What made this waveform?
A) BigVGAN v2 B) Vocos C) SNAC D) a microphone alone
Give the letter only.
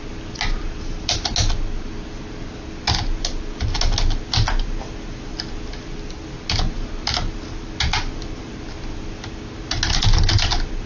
D